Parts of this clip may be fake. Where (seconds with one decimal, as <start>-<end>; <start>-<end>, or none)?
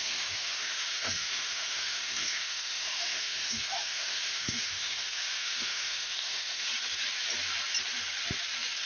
0.0-6.7